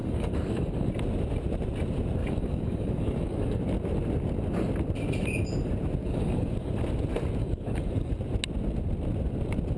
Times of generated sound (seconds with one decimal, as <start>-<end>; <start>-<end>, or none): 0.0-0.9; 2.2-3.6; 6.0-6.7; 7.4-8.1